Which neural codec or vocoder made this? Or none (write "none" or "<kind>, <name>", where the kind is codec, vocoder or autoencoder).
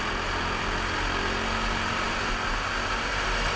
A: none